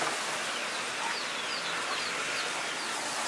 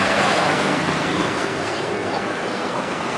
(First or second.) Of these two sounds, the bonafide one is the first